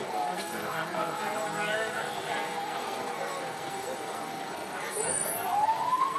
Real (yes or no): no